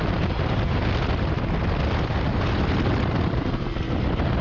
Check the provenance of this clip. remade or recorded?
recorded